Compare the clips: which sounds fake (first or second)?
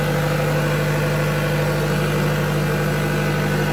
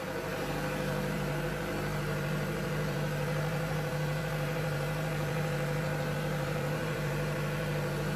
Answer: second